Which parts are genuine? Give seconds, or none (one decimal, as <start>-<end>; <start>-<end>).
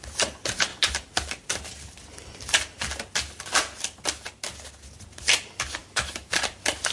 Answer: 0.0-5.8; 6.3-6.9